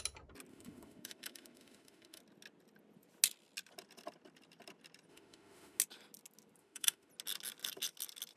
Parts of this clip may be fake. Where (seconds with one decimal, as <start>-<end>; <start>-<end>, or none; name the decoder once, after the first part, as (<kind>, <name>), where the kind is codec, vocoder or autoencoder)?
0.5-2.2 (autoencoder, DAC-VAE); 5.1-5.8; 6.6-7.1